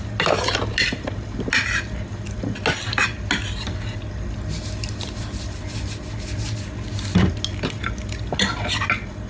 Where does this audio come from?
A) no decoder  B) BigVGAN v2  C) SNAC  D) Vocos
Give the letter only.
A